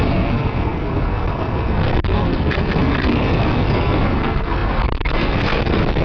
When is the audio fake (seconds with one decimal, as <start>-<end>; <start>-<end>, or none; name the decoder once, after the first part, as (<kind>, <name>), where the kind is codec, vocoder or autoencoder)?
0.0-6.0 (codec, SNAC)